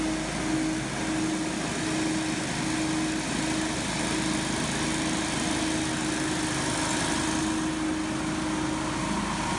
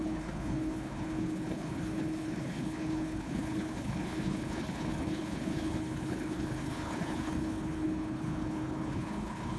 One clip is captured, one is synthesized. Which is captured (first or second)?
first